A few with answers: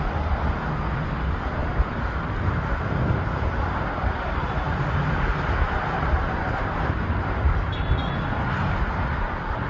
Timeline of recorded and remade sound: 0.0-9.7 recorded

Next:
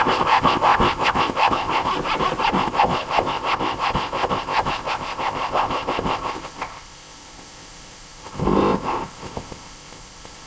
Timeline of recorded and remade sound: 0.0-1.9 remade; 1.9-2.5 recorded; 2.5-10.5 remade

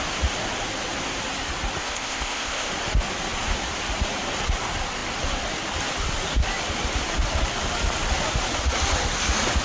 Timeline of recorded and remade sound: 0.0-1.8 recorded; 1.8-2.7 remade; 2.7-9.6 recorded